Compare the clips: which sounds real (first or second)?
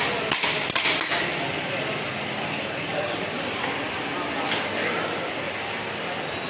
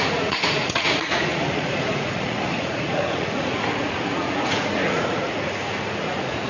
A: first